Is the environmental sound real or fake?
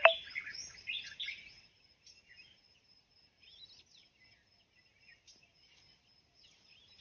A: real